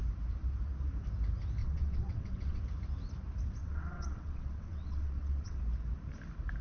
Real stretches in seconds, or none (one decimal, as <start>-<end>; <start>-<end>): 0.0-1.6; 2.6-3.6; 5.6-6.6